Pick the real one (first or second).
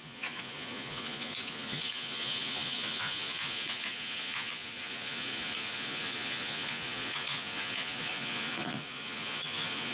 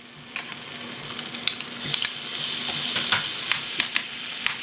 second